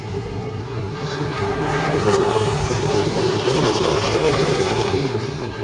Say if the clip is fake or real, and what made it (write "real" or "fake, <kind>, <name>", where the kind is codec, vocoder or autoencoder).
fake, codec, SNAC